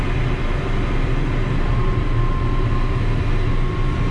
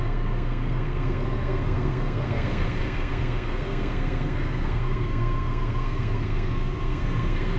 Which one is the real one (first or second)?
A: first